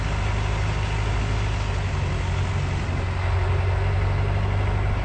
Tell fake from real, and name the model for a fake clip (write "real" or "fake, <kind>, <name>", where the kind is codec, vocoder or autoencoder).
real